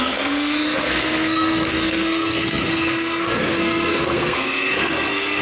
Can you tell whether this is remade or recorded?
remade